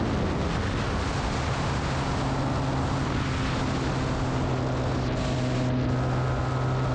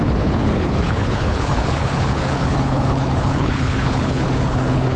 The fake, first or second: second